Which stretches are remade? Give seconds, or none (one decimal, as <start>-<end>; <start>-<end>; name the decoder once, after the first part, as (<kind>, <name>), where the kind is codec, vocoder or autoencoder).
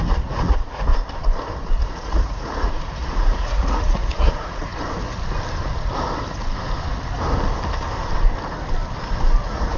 0.0-0.9 (vocoder, Vocos); 1.8-4.7; 9.4-9.8